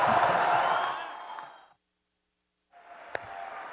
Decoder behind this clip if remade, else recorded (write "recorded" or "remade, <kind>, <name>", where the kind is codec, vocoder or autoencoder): recorded